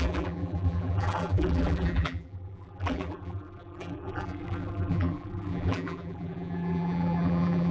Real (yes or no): no